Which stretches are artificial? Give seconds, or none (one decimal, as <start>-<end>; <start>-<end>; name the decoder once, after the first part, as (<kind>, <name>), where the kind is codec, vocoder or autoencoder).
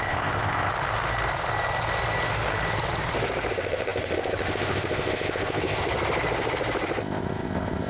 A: 0.0-0.7 (codec, ZipCodec); 3.5-5.9; 7.0-7.9